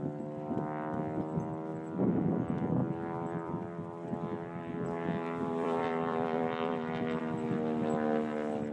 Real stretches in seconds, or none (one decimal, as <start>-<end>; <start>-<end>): 0.0-2.8; 7.2-8.7